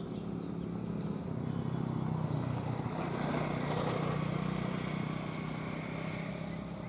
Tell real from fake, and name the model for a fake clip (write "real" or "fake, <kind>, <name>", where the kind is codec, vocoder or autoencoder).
real